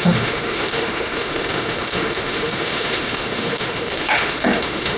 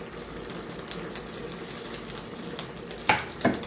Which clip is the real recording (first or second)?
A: second